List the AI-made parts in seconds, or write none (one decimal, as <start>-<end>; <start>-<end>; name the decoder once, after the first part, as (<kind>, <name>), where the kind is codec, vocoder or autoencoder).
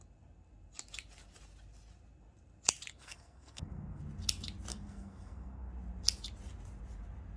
2.9-4.0 (codec, SNAC); 4.7-5.7